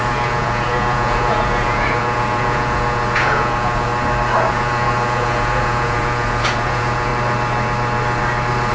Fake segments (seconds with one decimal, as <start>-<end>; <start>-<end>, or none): 0.0-3.9; 4.5-7.1